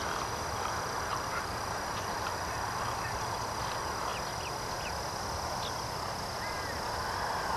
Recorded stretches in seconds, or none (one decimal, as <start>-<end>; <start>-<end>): 0.0-1.1; 3.2-7.6